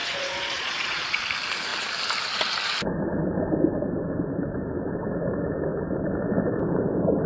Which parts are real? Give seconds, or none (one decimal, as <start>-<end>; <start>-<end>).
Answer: 1.2-7.3